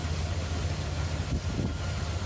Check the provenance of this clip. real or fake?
real